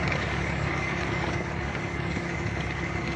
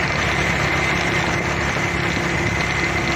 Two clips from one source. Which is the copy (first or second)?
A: first